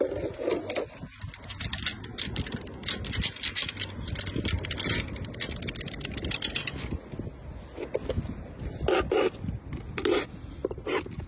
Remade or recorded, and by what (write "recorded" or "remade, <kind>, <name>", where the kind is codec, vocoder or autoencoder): recorded